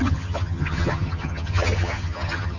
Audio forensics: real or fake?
fake